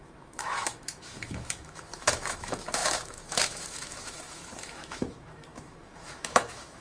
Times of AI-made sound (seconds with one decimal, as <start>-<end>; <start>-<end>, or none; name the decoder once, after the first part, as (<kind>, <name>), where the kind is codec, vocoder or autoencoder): 0.0-6.8 (autoencoder, DAC-VAE)